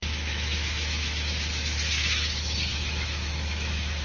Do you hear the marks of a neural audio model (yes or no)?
yes